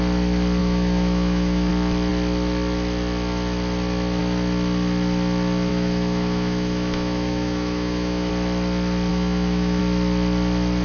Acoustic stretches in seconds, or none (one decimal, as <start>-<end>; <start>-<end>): 0.0-0.6; 1.7-5.7; 8.3-9.1; 9.8-10.8